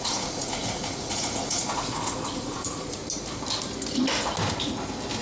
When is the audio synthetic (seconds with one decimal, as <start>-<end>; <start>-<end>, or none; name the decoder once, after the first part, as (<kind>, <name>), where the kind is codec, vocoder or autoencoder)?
0.0-3.0 (vocoder, Vocos)